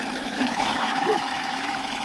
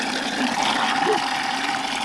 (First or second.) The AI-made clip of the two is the first